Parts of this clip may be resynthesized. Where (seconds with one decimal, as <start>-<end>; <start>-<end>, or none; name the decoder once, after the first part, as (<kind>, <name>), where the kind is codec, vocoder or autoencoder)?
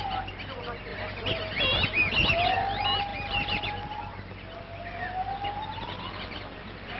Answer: none